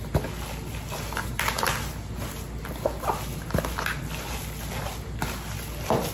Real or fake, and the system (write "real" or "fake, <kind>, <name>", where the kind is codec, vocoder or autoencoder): real